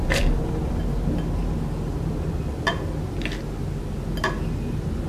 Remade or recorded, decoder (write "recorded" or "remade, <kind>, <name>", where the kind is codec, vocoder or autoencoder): recorded